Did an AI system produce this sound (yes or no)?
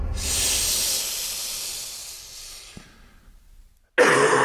no